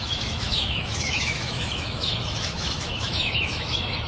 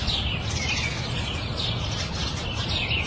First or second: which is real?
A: second